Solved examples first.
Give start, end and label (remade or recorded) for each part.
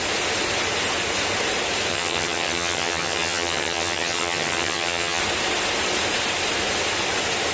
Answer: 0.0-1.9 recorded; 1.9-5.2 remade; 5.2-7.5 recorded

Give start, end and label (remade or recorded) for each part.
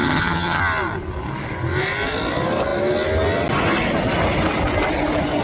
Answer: 0.0-0.6 remade; 0.6-5.4 recorded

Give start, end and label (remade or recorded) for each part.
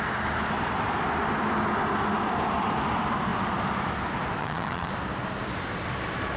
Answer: 0.0-4.4 recorded; 4.4-4.9 remade; 4.9-6.4 recorded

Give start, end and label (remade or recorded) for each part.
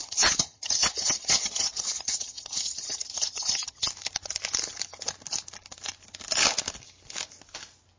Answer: 0.0-3.9 remade; 3.9-8.0 recorded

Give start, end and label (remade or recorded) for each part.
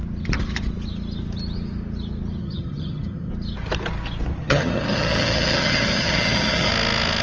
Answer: 0.0-2.4 recorded; 2.4-3.3 remade; 3.3-4.4 recorded; 4.4-6.7 remade; 6.7-7.2 recorded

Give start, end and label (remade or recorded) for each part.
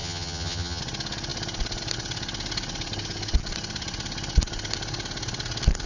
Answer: 0.0-0.8 remade; 0.8-5.9 recorded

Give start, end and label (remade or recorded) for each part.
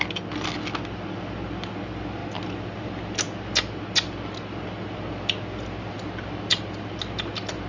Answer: 0.0-7.7 recorded